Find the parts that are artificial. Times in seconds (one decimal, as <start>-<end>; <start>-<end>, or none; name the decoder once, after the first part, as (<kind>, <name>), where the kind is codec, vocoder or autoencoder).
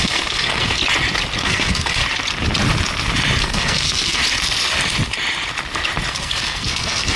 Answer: 0.0-0.8 (codec, SNAC); 1.4-2.0; 3.4-4.2; 6.1-7.2